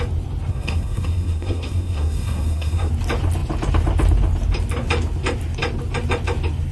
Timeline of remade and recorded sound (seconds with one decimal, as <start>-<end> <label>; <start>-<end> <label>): 0.0-0.5 recorded; 0.5-2.9 remade; 2.9-6.7 recorded